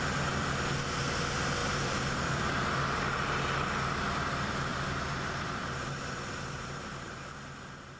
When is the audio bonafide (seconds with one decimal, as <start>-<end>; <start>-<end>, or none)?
0.0-1.6; 2.6-4.7